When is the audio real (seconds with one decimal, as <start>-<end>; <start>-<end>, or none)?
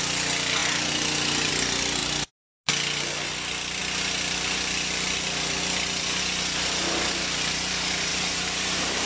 0.0-8.1